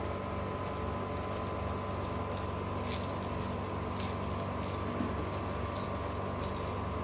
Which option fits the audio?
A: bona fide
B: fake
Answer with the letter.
A